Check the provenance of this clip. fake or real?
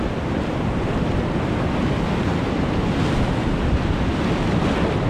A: real